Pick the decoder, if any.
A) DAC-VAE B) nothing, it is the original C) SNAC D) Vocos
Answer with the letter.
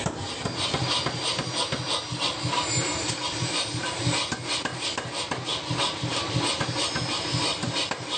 B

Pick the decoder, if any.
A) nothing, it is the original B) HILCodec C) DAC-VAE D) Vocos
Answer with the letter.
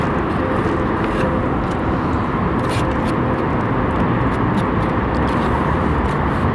A